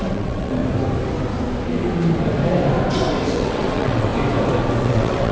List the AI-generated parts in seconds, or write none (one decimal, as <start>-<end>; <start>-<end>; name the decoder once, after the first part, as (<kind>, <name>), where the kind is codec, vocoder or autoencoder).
0.0-0.6 (vocoder, WaveNeXt); 3.3-4.1; 4.8-5.3